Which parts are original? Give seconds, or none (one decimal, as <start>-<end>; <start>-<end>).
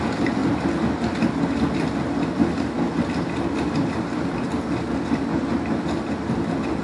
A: 0.0-6.8